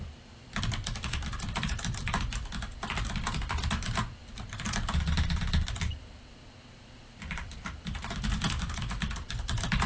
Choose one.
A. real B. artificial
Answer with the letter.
B